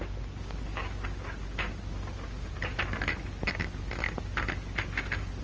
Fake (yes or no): no